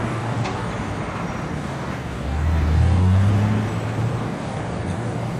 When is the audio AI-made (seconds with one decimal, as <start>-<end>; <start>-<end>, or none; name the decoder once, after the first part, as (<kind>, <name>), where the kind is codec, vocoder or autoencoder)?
0.0-0.7 (codec, DAC); 1.5-3.3; 4.2-5.4